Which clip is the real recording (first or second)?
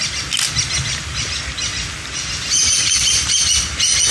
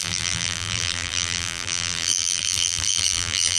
first